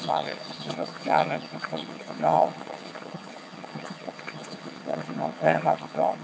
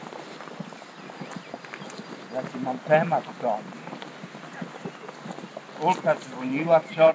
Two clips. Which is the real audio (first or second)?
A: second